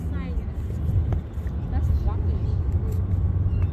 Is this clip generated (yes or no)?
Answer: no